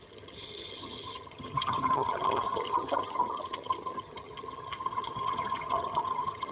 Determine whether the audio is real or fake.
fake